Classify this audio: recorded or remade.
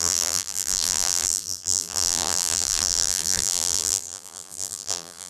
remade